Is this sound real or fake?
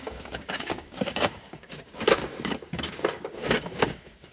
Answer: fake